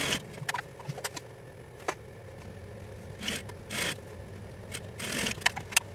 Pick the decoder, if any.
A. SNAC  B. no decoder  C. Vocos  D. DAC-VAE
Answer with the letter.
B